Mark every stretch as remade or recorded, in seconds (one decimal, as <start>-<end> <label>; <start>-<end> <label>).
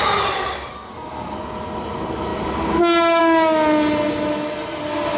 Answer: 0.0-0.7 recorded; 0.7-1.4 remade; 1.4-5.2 recorded